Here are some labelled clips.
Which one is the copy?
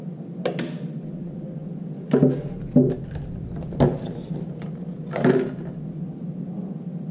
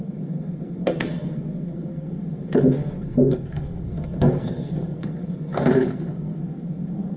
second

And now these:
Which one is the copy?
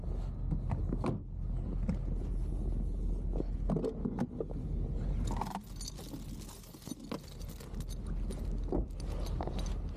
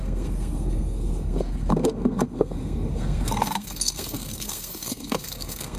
second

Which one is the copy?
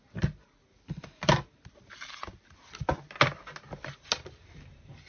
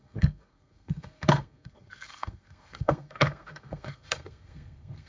second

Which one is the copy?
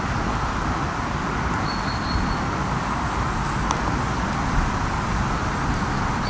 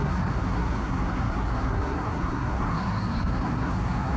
second